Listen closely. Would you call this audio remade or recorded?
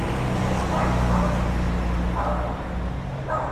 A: recorded